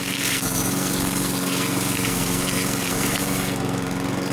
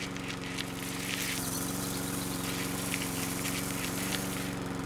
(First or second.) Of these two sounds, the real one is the second